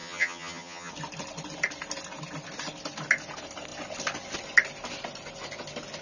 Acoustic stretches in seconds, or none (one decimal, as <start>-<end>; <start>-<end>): 0.9-6.0